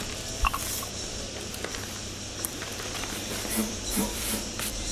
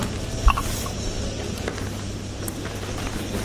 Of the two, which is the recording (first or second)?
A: second